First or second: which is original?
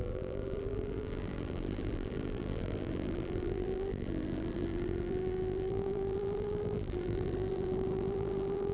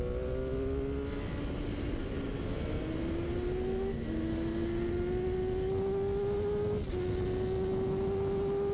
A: second